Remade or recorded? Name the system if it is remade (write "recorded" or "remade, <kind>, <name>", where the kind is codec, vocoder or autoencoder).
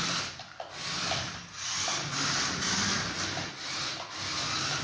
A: recorded